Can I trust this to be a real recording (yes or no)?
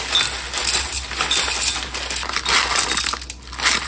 yes